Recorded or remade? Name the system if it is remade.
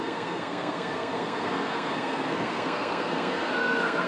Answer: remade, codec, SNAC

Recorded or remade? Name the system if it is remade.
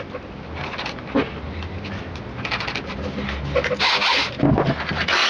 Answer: recorded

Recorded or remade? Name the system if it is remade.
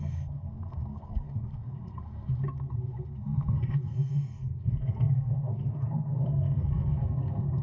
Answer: remade, codec, SNAC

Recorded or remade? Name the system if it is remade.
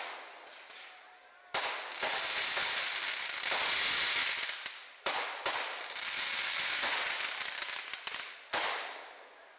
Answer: recorded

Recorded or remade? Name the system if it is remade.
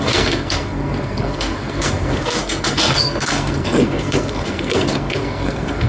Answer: remade, codec, SNAC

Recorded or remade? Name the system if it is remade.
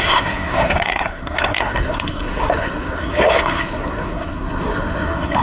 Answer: remade, codec, SNAC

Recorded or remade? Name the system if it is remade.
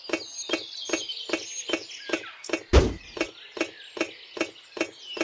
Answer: recorded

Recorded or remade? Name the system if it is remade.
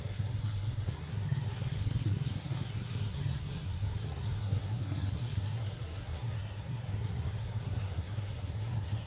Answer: remade, codec, SNAC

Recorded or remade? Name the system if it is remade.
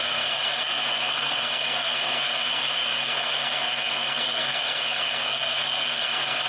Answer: remade, codec, SNAC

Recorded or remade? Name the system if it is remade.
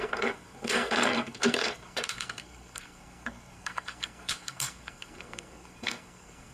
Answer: remade, codec, SNAC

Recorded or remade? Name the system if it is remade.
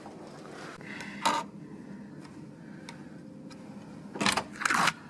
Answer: recorded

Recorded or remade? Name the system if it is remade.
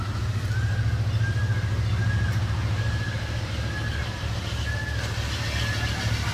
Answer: recorded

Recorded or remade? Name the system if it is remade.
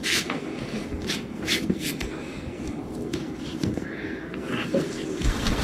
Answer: remade, codec, SNAC